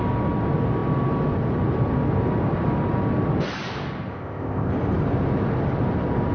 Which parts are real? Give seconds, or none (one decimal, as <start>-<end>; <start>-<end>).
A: 0.0-4.1; 4.7-6.3